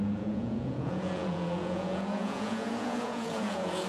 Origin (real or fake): fake